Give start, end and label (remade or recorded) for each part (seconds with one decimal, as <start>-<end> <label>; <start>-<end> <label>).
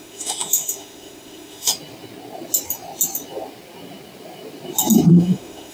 0.0-1.7 remade; 1.7-5.1 recorded; 5.1-5.7 remade